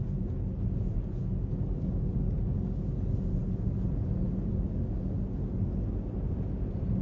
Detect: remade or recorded recorded